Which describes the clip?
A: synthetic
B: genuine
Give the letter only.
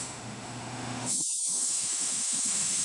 A